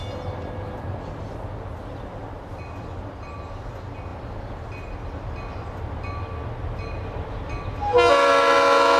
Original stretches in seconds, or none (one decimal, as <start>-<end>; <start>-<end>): 0.0-9.0